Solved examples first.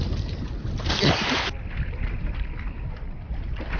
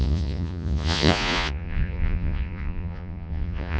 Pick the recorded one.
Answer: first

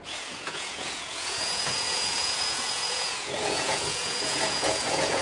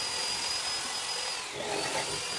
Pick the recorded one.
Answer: second